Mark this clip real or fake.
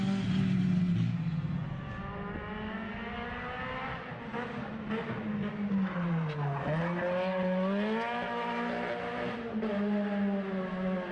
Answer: real